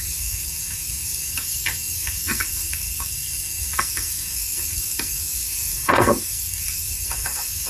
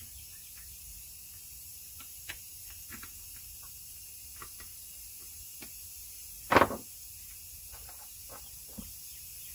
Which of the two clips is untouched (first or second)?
second